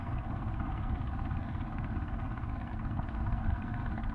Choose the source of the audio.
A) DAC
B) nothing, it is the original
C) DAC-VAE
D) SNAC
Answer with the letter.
D